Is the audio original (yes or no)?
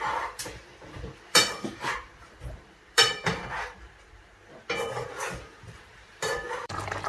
no